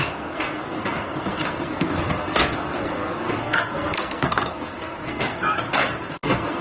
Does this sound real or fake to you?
fake